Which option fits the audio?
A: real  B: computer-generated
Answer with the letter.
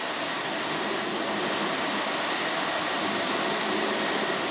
A